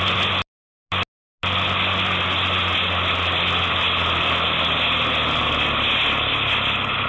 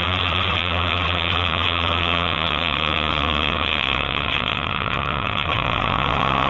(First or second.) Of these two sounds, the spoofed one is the second